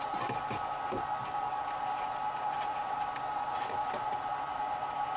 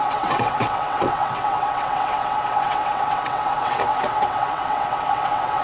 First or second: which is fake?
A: second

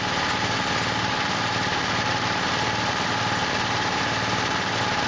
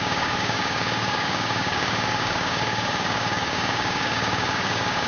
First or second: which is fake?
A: second